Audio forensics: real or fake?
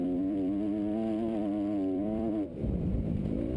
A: fake